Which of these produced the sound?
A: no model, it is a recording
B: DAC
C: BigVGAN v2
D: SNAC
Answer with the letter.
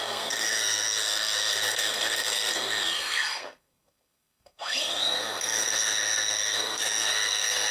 D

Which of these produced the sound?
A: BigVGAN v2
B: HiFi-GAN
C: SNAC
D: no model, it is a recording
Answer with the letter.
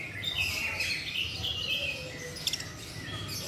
D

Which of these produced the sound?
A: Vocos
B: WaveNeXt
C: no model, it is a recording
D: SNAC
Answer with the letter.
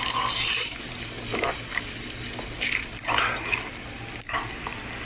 C